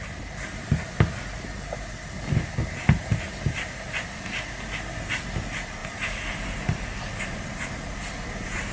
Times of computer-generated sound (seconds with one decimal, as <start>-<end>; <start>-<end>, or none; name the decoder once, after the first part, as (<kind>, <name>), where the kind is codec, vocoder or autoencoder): none